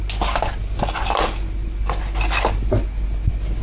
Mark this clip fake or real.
real